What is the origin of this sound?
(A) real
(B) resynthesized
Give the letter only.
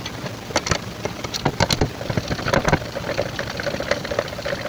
A